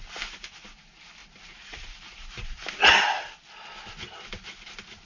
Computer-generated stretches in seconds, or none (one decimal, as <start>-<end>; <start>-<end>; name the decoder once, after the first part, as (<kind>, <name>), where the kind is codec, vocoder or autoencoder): 1.2-2.8 (vocoder, BigVGAN v2)